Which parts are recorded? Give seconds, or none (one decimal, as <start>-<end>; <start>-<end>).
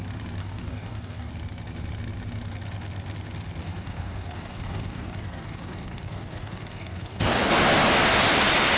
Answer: 0.0-0.4; 1.3-3.6; 7.5-8.8